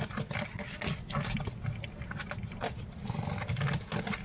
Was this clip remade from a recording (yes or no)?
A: no